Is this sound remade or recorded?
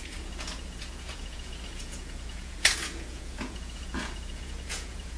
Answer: remade